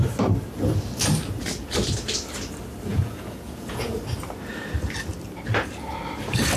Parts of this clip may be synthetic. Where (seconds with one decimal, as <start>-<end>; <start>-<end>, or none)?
2.9-4.0